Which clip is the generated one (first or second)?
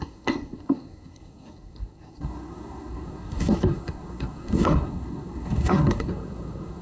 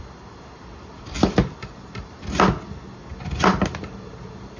first